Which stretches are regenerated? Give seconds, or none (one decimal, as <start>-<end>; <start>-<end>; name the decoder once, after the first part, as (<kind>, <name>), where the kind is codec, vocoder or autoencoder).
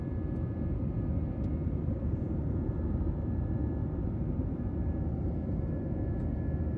1.6-2.2 (vocoder, BigVGAN v2); 3.8-6.2